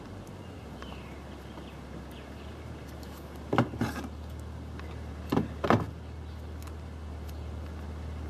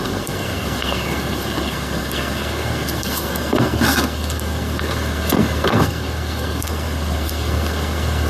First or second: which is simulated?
second